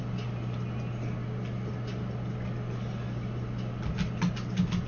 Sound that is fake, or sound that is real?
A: real